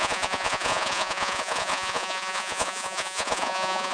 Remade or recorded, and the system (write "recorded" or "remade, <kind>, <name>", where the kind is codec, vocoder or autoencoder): remade, vocoder, Vocos